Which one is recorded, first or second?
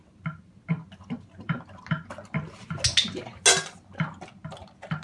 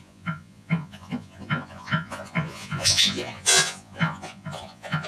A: first